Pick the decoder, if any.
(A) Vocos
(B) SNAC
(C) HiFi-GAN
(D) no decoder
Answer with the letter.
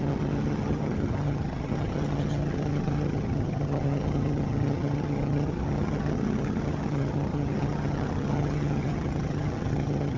C